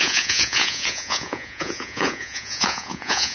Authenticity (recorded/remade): remade